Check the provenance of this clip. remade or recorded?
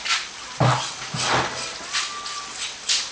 recorded